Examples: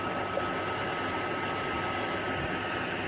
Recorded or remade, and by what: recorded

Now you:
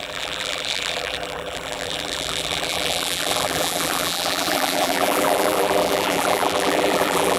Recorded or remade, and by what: remade, vocoder, BigVGAN v2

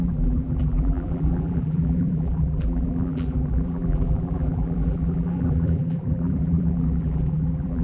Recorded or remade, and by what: remade, vocoder, BigVGAN v2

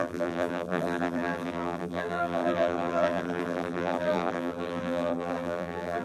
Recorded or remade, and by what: remade, vocoder, BigVGAN v2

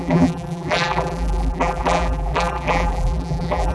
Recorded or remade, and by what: remade, vocoder, BigVGAN v2